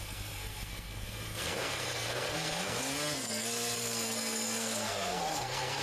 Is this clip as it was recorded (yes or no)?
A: no